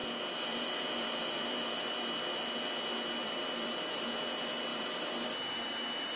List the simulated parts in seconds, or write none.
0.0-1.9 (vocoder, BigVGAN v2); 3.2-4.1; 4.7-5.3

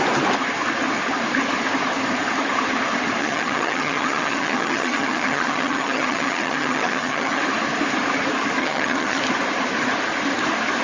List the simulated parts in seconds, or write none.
3.2-7.4 (vocoder, HiFi-GAN); 8.6-9.2

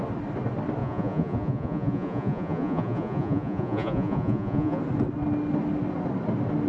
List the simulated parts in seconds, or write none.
0.8-4.8 (vocoder, Vocos)

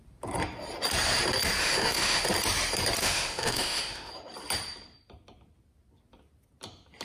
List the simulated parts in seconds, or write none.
1.6-2.2 (autoencoder, DAC-VAE); 3.0-4.1

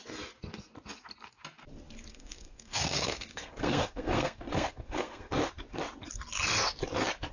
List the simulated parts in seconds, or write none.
2.1-5.3 (codec, SNAC)

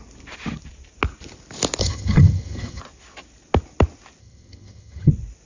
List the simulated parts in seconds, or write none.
1.8-2.8 (vocoder, HiFi-GAN); 4.2-5.1

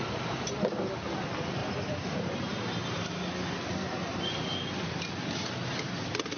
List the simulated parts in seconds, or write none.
1.6-3.0 (vocoder, BigVGAN v2)